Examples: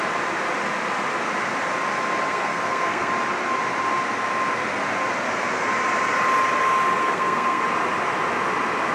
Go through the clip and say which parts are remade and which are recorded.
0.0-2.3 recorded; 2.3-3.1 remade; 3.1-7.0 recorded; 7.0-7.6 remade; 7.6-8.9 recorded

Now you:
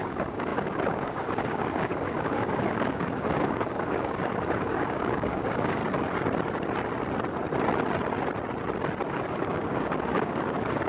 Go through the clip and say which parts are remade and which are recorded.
0.0-5.8 remade; 5.8-9.1 recorded; 9.1-10.9 remade

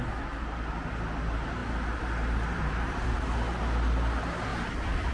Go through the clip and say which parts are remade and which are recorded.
0.0-4.5 recorded; 4.5-5.1 remade

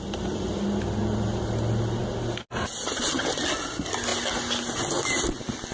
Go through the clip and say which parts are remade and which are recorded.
0.0-5.7 recorded

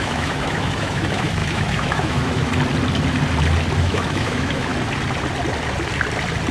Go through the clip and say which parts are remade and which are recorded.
0.0-2.5 remade; 2.5-3.8 recorded; 3.8-4.7 remade; 4.7-6.5 recorded

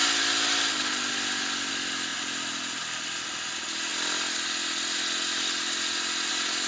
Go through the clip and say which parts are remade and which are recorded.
0.0-6.7 recorded